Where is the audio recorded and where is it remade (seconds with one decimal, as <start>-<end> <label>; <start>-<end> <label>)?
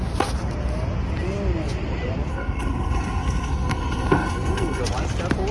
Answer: 0.0-2.3 recorded; 2.3-4.8 remade; 4.8-5.5 recorded